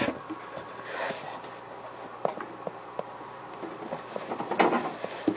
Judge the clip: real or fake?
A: real